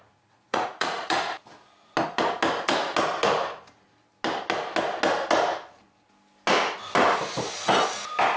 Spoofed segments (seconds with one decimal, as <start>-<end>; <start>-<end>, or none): 0.0-1.3